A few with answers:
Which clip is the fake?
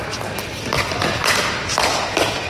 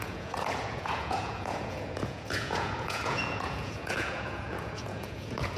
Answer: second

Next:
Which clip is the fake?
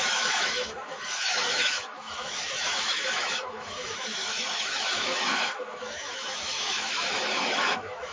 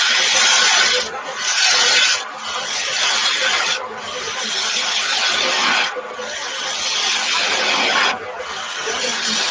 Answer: first